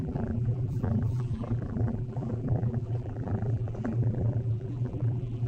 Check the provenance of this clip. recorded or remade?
remade